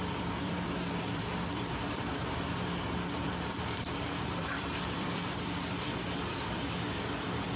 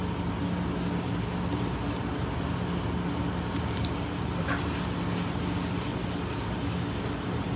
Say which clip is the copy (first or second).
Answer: first